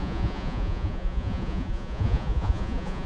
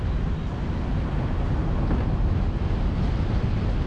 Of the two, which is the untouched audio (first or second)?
second